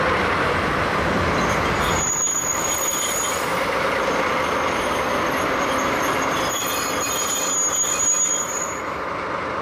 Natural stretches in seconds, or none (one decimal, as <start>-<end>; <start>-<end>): 0.0-9.6